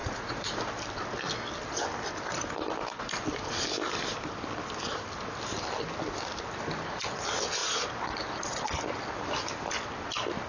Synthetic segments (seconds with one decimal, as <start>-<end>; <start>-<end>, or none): 0.0-0.6